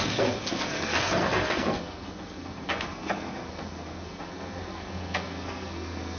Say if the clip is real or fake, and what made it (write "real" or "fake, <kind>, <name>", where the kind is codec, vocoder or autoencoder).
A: fake, codec, SNAC